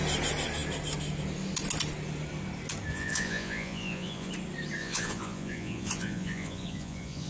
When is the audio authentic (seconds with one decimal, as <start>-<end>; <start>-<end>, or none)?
0.0-2.9; 4.3-4.8